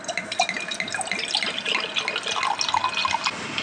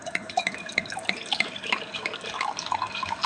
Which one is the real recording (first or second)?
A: first